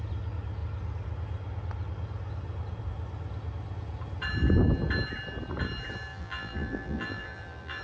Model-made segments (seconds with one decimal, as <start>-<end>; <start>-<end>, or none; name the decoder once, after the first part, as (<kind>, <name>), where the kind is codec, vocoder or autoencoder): 6.1-7.8 (vocoder, BigVGAN v2)